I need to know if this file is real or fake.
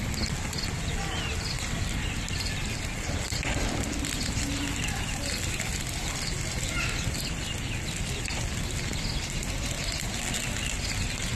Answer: real